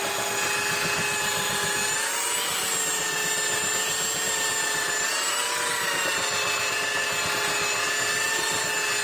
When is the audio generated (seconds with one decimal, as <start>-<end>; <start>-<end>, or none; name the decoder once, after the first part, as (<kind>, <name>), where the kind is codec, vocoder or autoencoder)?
none